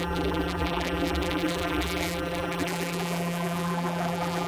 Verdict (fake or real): fake